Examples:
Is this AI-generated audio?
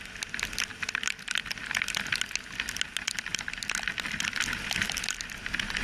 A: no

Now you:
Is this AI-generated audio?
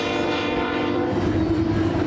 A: yes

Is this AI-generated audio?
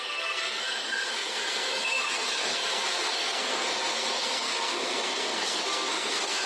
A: yes